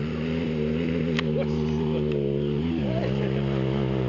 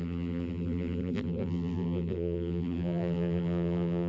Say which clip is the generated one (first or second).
second